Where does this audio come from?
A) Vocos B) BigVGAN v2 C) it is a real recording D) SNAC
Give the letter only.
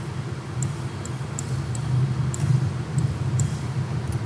C